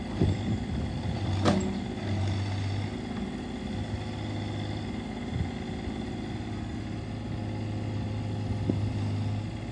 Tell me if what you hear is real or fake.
real